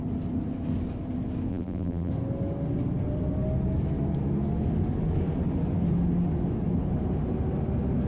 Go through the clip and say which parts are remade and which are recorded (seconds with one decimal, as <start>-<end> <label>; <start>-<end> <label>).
0.0-1.5 recorded; 1.5-2.1 remade; 2.1-8.1 recorded